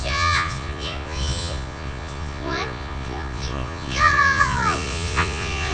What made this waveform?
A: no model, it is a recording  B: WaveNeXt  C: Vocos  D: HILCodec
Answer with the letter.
C